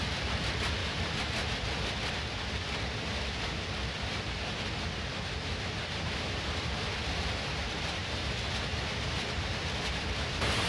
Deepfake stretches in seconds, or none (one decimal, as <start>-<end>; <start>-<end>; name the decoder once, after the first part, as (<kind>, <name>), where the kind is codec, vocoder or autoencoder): 0.0-0.8 (vocoder, BigVGAN v2); 2.1-4.1; 6.5-8.0; 8.8-10.7